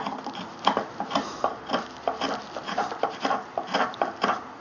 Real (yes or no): yes